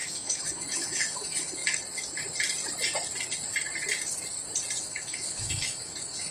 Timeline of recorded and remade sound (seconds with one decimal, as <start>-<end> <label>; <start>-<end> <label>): 0.0-1.6 remade; 1.6-4.8 recorded; 4.8-6.3 remade